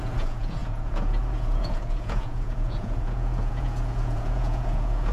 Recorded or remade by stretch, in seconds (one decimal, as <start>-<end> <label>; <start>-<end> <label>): 0.0-5.1 remade